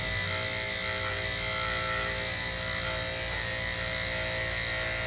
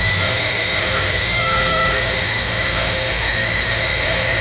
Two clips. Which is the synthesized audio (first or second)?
second